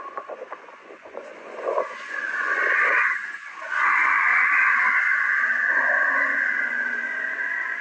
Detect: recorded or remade remade